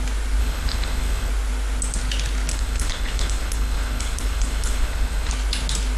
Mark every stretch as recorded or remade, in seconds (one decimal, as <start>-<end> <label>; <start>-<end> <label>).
0.0-0.4 recorded; 0.4-1.3 remade; 1.3-2.5 recorded; 2.5-5.3 remade; 5.3-6.0 recorded